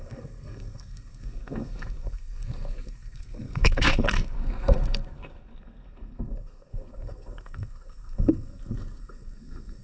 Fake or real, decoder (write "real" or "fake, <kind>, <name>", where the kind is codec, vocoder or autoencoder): fake, codec, SNAC